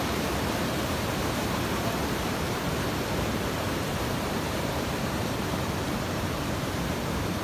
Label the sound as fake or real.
fake